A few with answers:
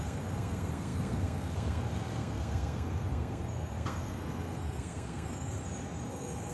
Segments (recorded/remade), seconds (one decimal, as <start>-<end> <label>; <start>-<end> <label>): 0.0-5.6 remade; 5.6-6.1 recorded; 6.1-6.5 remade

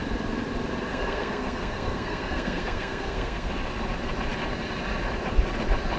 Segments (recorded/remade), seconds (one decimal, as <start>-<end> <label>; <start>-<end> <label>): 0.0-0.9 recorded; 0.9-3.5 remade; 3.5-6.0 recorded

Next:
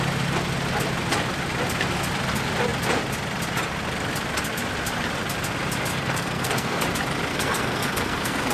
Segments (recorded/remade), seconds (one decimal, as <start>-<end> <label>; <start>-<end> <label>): 0.0-5.9 recorded; 5.9-6.8 remade; 6.8-7.3 recorded; 7.3-8.5 remade

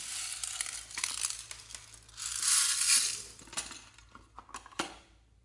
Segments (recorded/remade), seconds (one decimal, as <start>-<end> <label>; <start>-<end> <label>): 0.0-5.4 recorded

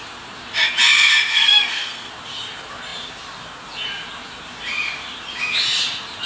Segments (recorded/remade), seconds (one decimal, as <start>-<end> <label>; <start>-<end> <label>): 0.0-1.3 recorded; 1.3-2.1 remade; 2.1-6.3 recorded

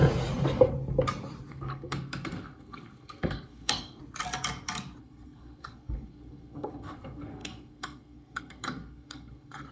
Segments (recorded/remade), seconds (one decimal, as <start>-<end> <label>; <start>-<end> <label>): 0.0-1.5 recorded; 1.5-4.0 remade; 4.0-5.0 recorded; 5.0-9.7 remade